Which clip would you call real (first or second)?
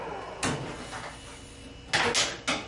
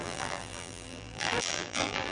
first